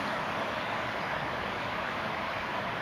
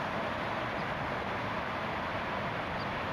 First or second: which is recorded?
second